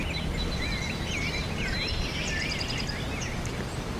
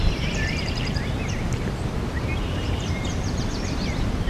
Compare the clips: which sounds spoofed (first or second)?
second